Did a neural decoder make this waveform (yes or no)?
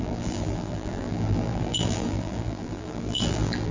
yes